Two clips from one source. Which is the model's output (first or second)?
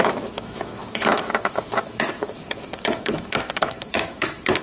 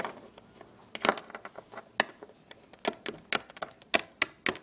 first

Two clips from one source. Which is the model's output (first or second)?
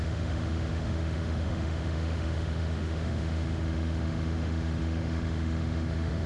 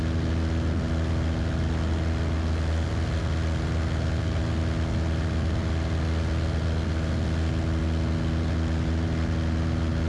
first